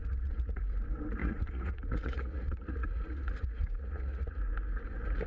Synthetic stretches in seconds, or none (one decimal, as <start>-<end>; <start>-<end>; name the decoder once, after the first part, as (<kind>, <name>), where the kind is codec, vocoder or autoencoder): 0.0-0.6 (vocoder, Vocos); 1.2-4.4